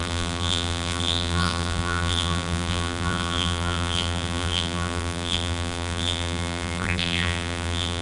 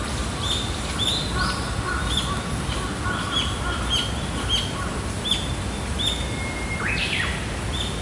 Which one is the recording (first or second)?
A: second